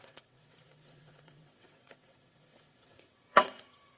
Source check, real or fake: fake